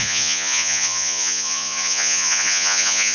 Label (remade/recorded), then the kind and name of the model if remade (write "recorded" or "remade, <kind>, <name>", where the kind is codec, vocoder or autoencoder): remade, vocoder, Vocos